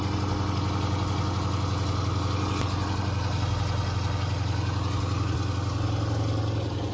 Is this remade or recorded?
recorded